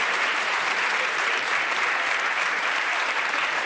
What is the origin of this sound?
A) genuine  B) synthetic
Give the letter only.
B